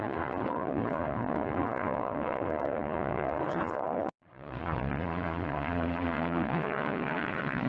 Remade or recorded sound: remade